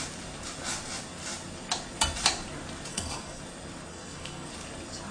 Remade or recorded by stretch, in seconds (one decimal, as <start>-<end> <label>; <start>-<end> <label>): 0.0-2.9 recorded; 2.9-3.4 remade; 3.4-3.9 recorded; 3.9-4.5 remade; 4.5-5.1 recorded